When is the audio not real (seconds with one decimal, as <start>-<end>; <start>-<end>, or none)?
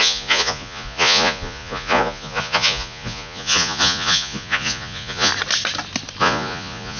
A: 0.0-5.3; 6.2-7.0